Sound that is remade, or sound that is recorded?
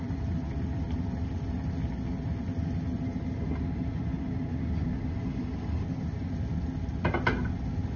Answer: recorded